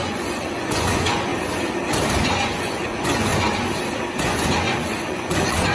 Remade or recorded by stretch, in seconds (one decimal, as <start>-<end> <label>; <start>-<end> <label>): 0.0-1.3 remade; 1.3-2.2 recorded; 2.2-3.3 remade; 3.3-4.2 recorded; 4.2-5.7 remade